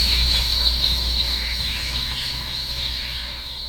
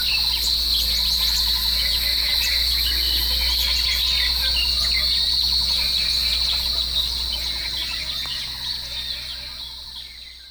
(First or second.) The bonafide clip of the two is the second